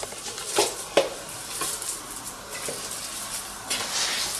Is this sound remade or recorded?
recorded